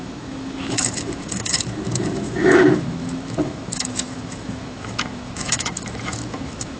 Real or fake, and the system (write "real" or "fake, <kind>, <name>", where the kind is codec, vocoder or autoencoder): fake, autoencoder, DAC-VAE